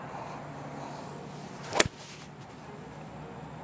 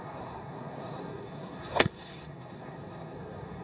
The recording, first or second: first